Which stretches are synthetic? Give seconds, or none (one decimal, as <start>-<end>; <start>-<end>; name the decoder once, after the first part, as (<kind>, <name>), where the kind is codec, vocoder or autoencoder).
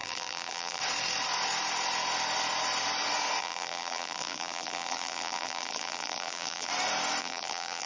0.0-0.8 (vocoder, BigVGAN v2); 3.4-6.7; 7.2-7.9